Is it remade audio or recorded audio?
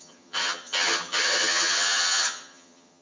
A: remade